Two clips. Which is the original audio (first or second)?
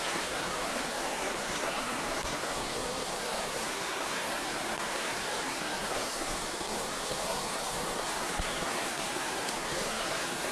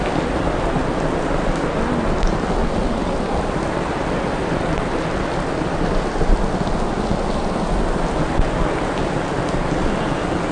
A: second